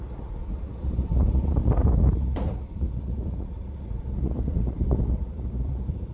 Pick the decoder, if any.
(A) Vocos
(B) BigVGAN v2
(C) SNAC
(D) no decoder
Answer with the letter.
A